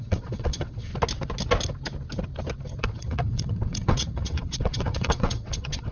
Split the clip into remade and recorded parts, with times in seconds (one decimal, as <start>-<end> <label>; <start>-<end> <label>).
0.0-0.9 remade; 0.9-2.8 recorded; 2.8-5.9 remade